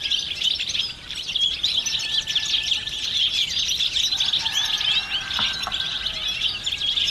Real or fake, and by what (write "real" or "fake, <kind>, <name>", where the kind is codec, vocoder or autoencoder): real